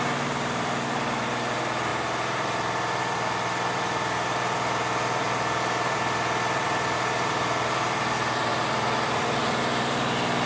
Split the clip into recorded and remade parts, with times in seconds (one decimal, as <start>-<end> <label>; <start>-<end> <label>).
0.0-8.5 recorded; 8.5-9.6 remade; 9.6-10.5 recorded